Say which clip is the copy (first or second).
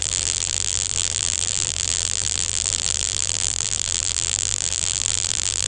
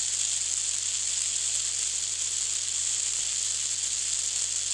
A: first